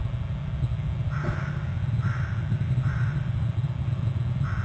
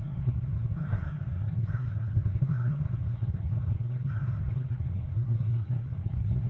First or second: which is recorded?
first